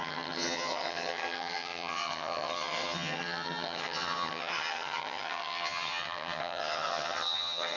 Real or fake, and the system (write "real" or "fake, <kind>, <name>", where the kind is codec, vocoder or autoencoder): fake, vocoder, HiFi-GAN